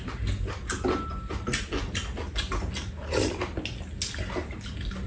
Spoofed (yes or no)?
no